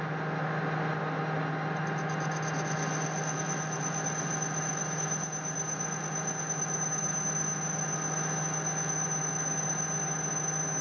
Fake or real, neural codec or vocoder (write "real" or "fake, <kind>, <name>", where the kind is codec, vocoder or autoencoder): real